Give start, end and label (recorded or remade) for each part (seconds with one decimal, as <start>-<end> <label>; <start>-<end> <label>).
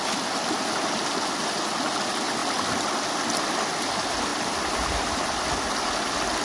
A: 0.0-4.3 recorded; 4.3-5.7 remade; 5.7-6.4 recorded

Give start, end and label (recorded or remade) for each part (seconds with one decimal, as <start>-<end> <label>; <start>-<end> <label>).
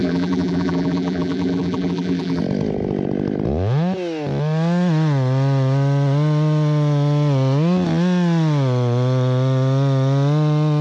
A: 0.0-2.4 remade; 2.4-10.8 recorded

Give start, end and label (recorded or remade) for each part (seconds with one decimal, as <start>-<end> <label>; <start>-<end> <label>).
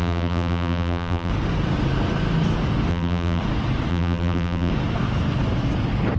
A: 0.0-1.3 remade; 1.3-2.9 recorded; 2.9-3.4 remade; 3.4-3.9 recorded; 3.9-4.7 remade; 4.7-6.2 recorded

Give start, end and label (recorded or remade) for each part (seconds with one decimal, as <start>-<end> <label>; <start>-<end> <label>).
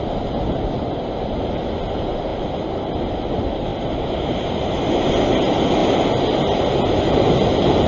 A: 0.0-5.8 recorded; 5.8-7.9 remade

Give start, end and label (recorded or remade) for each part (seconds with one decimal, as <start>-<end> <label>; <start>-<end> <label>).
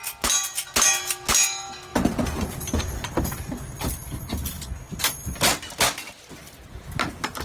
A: 0.0-1.9 recorded; 1.9-2.8 remade; 2.8-7.4 recorded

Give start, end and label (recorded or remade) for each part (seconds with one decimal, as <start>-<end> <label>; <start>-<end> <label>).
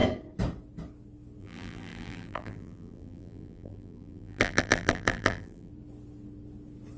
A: 0.0-1.4 recorded; 1.4-5.7 remade; 5.7-7.0 recorded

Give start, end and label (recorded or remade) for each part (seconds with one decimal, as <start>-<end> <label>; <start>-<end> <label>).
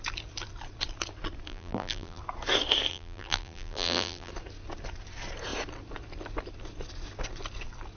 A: 0.0-1.5 recorded; 1.5-2.2 remade; 2.2-2.9 recorded; 2.9-4.3 remade; 4.3-8.0 recorded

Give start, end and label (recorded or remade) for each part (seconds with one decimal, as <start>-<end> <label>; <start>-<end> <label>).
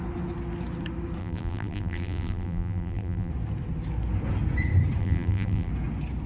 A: 0.0-1.2 recorded; 1.2-3.3 remade; 3.3-5.0 recorded; 5.0-5.7 remade; 5.7-6.3 recorded